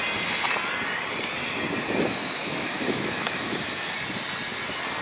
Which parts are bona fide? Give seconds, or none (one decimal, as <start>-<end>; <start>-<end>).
0.0-2.2; 3.9-5.0